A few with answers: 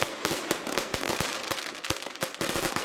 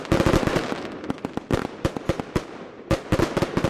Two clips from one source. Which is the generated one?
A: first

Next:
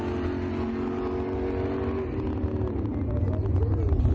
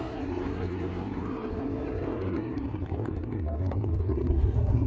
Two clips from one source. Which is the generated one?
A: second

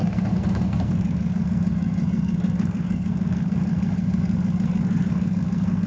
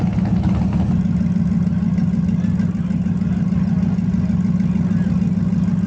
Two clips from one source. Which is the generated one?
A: first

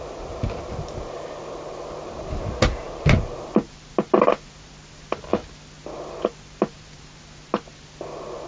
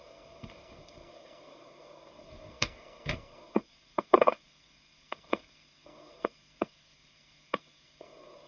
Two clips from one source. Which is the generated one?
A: second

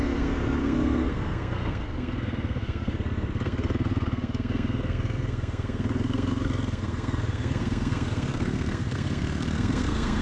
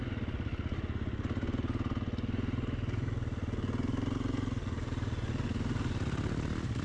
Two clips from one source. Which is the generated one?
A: first